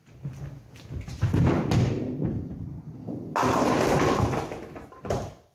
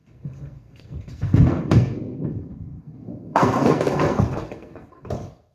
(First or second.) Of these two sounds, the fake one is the second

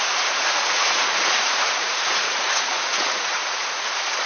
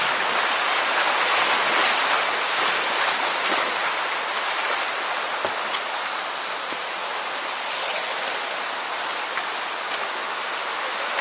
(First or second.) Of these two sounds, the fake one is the first